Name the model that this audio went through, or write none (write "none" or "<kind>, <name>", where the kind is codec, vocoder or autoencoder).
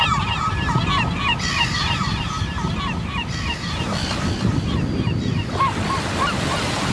none